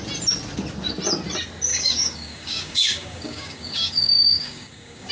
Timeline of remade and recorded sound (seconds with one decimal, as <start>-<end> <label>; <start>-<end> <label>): 0.0-1.7 recorded; 1.7-5.1 remade